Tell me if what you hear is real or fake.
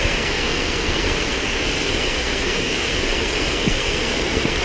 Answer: fake